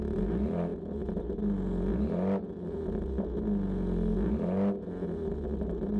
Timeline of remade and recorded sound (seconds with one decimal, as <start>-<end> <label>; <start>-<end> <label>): 0.0-6.0 recorded